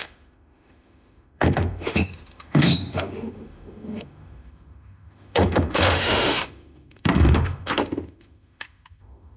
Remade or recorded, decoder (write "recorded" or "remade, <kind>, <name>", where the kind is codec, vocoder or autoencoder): remade, autoencoder, DAC-VAE